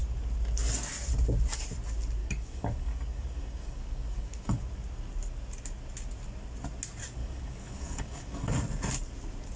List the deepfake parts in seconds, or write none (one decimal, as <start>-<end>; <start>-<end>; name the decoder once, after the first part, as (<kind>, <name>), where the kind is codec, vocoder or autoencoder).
2.2-4.6 (codec, DAC); 7.2-8.5